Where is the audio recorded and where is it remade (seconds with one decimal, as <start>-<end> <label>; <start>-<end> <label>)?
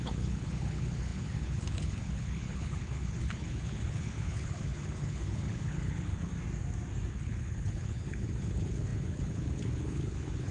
0.0-6.3 remade; 6.3-7.1 recorded; 7.1-10.5 remade